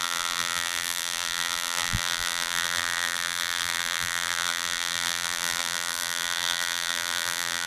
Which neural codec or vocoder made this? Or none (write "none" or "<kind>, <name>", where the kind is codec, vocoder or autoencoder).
vocoder, BigVGAN v2